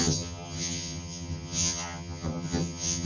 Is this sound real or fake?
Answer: fake